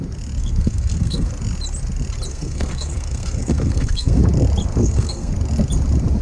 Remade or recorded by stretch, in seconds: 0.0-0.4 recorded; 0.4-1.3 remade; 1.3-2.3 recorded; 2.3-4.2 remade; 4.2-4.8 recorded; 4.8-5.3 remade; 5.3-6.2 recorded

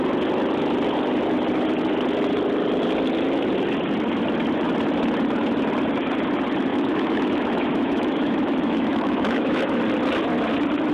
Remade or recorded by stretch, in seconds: 0.0-6.7 recorded; 6.7-9.8 remade; 9.8-10.9 recorded

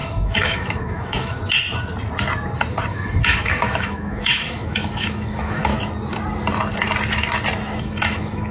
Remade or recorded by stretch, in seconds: 0.0-1.4 remade; 1.4-2.9 recorded; 2.9-5.7 remade; 5.7-7.8 recorded; 7.8-8.5 remade

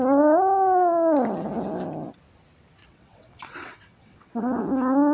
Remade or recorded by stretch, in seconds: 0.0-2.8 recorded; 2.8-4.6 remade; 4.6-5.1 recorded

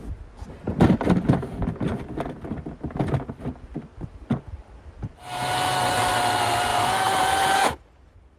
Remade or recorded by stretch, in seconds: 0.0-6.7 recorded; 6.7-7.7 remade; 7.7-8.4 recorded

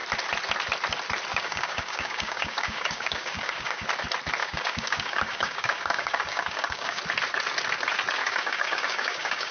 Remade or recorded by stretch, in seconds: 0.0-1.3 recorded; 1.3-3.8 remade; 3.8-4.4 recorded; 4.4-7.0 remade; 7.0-8.2 recorded; 8.2-9.5 remade